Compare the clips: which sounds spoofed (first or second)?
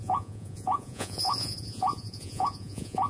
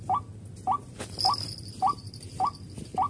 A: first